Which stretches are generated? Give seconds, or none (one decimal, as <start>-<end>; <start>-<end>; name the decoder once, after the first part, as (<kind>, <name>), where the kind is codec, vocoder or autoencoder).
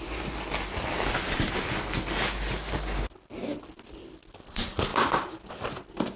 none